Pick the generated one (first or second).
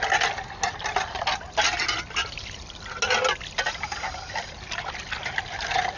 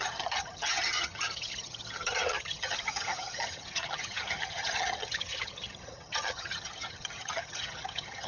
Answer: second